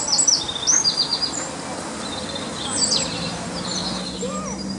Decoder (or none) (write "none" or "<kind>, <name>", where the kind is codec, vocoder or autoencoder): none